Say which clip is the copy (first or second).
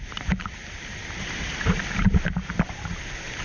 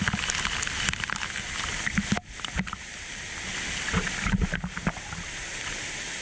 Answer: first